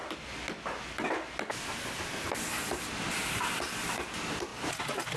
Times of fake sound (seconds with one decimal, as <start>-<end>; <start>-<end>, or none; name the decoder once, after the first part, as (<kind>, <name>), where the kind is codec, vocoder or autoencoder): 2.5-3.2 (vocoder, BigVGAN v2)